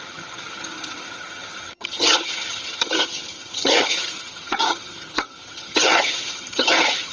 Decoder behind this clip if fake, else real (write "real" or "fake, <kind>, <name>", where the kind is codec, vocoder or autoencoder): fake, vocoder, HiFi-GAN